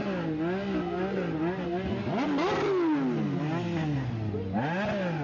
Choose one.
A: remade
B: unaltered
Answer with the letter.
B